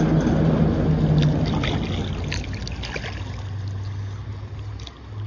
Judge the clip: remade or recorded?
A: recorded